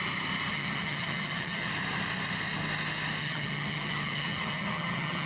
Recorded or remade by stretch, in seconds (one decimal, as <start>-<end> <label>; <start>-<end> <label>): 0.0-0.5 recorded; 0.5-1.7 remade; 1.7-3.2 recorded; 3.2-5.3 remade